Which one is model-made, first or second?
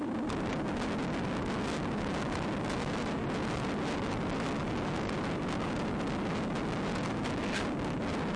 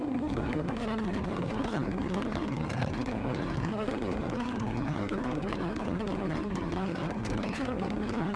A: second